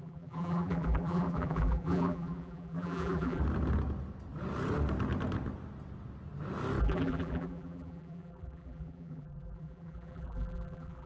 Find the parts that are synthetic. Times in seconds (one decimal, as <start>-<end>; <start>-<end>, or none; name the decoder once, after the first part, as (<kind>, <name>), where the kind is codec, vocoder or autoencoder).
0.0-3.4 (vocoder, BigVGAN v2); 6.8-11.1